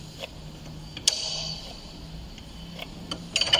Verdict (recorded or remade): recorded